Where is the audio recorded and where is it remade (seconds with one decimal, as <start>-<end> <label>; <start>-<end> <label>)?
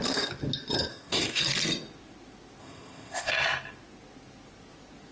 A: 0.0-0.9 recorded; 0.9-1.4 remade; 1.4-2.6 recorded; 2.6-3.3 remade; 3.3-5.1 recorded